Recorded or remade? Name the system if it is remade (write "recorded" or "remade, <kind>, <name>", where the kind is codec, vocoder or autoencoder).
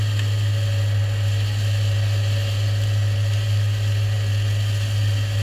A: recorded